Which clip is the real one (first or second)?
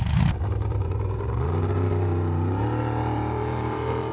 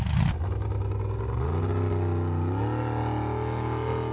second